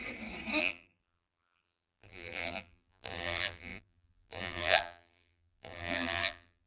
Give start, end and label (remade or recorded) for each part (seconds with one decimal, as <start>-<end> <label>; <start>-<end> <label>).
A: 0.0-0.6 recorded; 0.6-6.7 remade